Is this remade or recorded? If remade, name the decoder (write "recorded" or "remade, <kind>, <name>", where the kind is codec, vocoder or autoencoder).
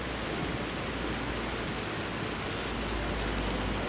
recorded